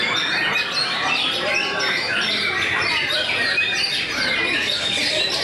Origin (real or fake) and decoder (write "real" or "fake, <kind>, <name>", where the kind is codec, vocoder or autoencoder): fake, vocoder, BigVGAN v2